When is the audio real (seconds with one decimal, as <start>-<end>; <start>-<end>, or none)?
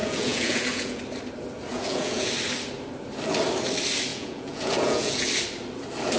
1.0-1.7; 2.3-4.1; 5.3-6.2